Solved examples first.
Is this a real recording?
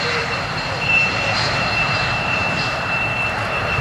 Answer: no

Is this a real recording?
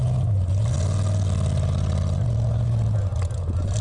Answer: yes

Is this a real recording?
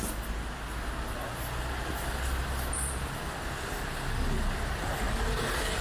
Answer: yes